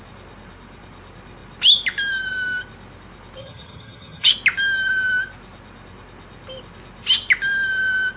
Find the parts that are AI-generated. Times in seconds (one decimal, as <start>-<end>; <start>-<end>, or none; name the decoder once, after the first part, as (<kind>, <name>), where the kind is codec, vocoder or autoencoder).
3.4-4.3 (vocoder, HiFi-GAN)